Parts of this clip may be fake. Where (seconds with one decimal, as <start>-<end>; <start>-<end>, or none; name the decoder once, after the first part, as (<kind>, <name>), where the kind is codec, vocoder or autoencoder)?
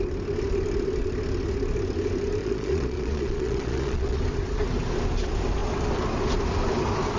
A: 2.4-4.2 (vocoder, Vocos)